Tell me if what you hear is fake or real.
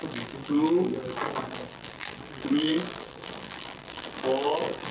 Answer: fake